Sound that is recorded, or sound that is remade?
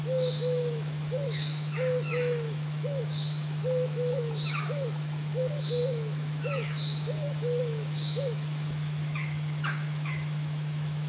remade